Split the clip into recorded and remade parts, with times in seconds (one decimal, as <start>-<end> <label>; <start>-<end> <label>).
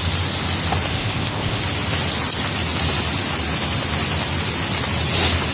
0.0-0.9 recorded; 0.9-1.6 remade; 1.6-5.5 recorded